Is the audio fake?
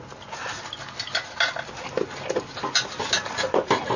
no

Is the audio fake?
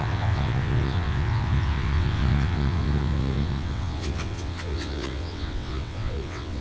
yes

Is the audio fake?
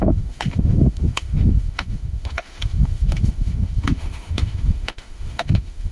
yes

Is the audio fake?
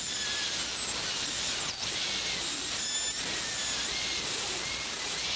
no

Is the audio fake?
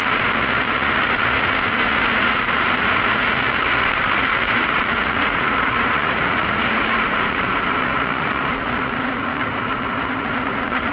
yes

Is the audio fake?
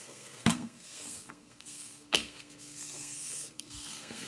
yes